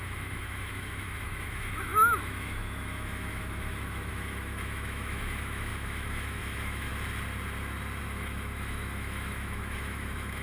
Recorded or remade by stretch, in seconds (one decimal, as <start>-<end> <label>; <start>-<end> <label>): 0.0-6.9 remade; 6.9-8.0 recorded; 8.0-10.4 remade